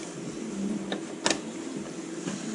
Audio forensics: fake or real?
real